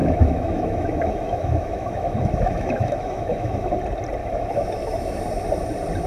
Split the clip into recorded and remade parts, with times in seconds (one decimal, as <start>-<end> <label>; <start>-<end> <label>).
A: 0.0-3.7 remade; 3.7-4.2 recorded; 4.2-5.2 remade; 5.2-6.1 recorded